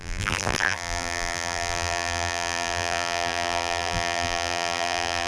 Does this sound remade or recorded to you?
remade